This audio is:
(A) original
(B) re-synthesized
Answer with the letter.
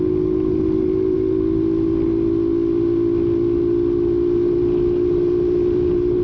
A